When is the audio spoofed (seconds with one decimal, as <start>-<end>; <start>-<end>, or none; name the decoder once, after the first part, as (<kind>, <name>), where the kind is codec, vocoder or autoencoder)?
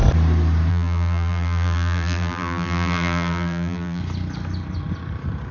0.7-4.0 (vocoder, BigVGAN v2)